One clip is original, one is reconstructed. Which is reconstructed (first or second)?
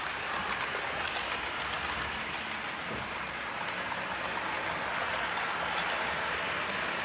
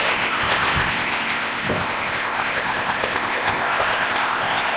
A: second